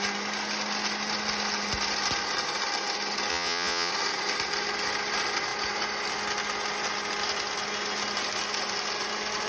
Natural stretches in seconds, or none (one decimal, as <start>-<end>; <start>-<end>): 0.0-3.3; 3.9-9.5